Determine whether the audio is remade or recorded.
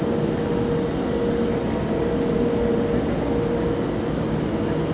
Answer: recorded